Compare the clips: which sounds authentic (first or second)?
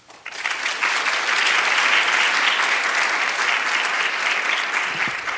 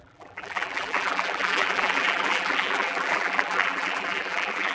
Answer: first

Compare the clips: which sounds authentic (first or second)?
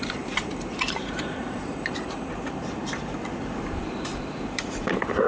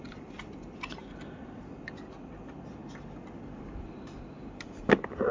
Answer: second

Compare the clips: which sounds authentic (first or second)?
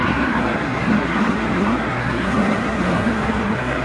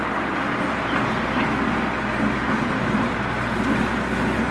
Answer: second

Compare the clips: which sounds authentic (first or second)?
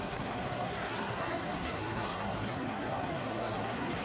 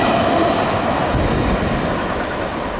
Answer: second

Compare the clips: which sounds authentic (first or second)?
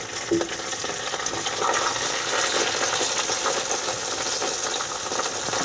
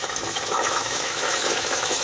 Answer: first